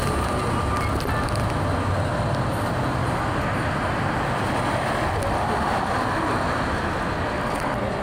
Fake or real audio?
real